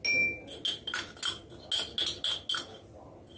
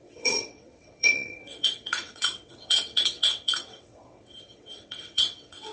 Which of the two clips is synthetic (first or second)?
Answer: second